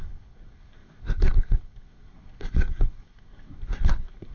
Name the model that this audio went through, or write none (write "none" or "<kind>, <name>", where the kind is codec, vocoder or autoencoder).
codec, SNAC